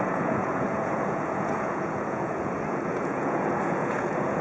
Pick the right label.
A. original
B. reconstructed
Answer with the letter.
B